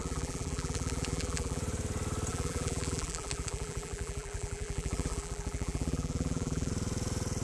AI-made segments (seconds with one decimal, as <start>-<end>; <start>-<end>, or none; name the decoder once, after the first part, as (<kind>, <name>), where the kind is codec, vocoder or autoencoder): 0.0-1.6 (vocoder, BigVGAN v2); 2.3-6.7